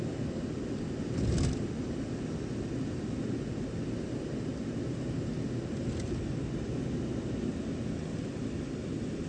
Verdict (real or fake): real